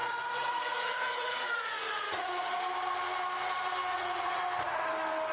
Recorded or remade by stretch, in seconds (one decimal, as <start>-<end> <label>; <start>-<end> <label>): 0.0-2.6 remade; 2.6-3.9 recorded; 3.9-4.4 remade; 4.4-5.3 recorded